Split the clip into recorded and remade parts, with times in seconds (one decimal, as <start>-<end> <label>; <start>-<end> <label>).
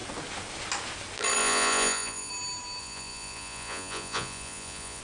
0.0-1.4 recorded; 1.4-2.3 remade; 2.3-2.8 recorded; 2.8-5.0 remade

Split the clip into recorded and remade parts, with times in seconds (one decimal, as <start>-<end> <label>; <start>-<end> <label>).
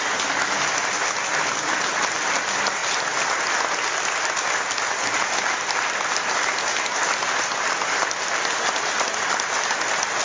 0.0-10.2 recorded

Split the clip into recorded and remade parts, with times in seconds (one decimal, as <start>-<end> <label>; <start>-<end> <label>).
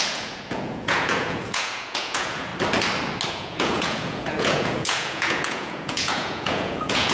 0.0-2.5 remade; 2.5-3.3 recorded; 3.3-7.1 remade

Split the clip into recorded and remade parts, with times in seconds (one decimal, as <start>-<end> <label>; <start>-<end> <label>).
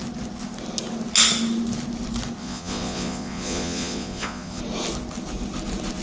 0.0-2.4 recorded; 2.4-4.6 remade; 4.6-6.0 recorded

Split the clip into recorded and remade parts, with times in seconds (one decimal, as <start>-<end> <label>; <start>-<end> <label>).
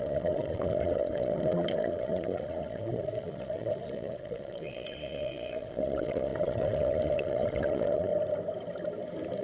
0.0-8.1 remade; 8.1-9.4 recorded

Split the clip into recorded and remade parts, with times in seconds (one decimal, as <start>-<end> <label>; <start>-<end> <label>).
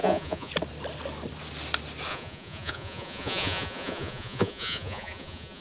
0.0-0.5 remade; 0.5-2.1 recorded; 2.1-5.6 remade